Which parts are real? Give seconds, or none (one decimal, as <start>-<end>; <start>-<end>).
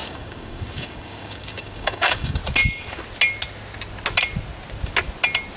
2.4-5.6